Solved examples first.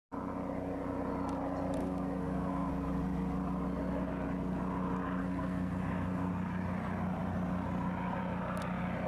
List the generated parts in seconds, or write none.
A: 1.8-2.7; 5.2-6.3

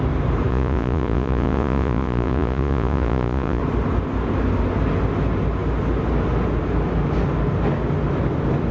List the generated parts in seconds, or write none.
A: 0.5-3.6